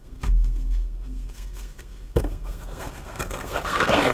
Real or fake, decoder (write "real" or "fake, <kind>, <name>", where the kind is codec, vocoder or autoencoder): fake, codec, SNAC